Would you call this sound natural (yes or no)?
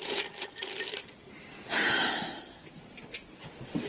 yes